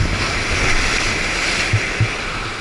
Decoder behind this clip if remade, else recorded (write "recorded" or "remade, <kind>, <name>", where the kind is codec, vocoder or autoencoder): recorded